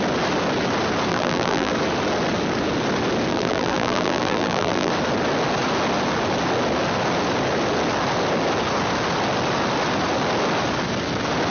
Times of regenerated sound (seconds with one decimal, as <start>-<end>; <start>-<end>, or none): 1.1-1.7; 3.3-4.9